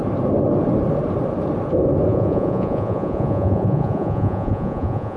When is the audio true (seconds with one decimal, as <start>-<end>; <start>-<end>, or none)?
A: 0.0-2.1